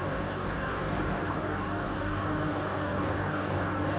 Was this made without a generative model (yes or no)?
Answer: no